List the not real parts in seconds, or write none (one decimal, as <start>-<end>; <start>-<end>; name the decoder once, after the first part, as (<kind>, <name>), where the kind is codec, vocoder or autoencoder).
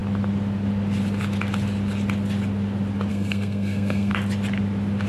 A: 3.1-4.1 (codec, SNAC)